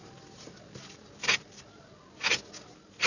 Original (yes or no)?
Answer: yes